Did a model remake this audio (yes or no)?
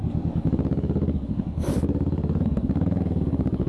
yes